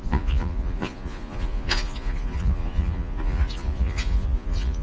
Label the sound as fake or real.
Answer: fake